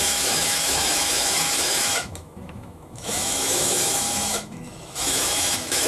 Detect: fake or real fake